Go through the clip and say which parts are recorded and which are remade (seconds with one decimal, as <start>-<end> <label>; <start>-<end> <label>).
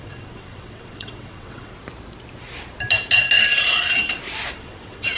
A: 0.0-1.7 remade; 1.7-4.5 recorded; 4.5-5.2 remade